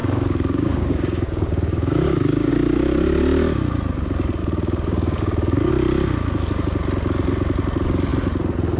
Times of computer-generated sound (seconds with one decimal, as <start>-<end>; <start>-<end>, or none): 0.0-2.5; 4.4-5.7